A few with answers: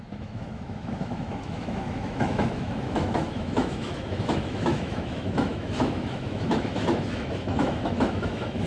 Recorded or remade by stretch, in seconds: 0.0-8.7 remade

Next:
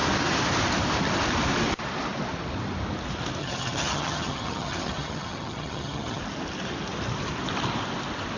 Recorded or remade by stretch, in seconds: 0.0-3.4 recorded; 3.4-6.2 remade; 6.2-8.4 recorded

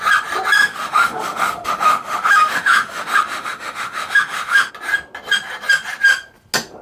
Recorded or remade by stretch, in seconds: 0.0-0.6 recorded; 0.6-4.7 remade; 4.7-6.8 recorded

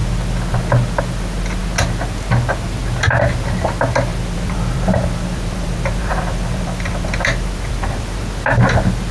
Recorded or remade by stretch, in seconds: 0.0-4.1 recorded; 4.1-8.2 remade; 8.2-9.1 recorded